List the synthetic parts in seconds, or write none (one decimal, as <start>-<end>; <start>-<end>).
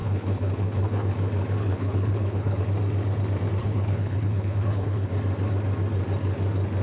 0.0-1.1; 1.6-2.6; 3.6-5.1